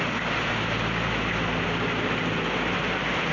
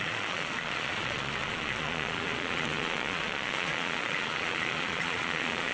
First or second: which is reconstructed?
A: second